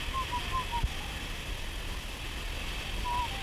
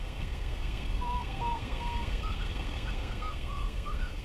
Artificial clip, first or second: second